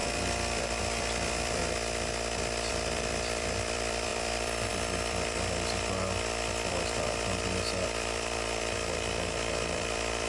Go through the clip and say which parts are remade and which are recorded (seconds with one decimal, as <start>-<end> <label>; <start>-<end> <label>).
0.0-1.6 remade; 1.6-2.7 recorded; 2.7-10.3 remade